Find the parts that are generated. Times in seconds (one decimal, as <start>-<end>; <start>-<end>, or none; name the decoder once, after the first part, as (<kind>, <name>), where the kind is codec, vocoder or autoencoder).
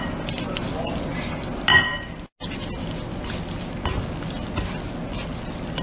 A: none